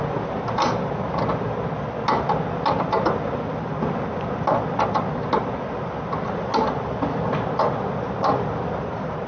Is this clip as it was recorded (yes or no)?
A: yes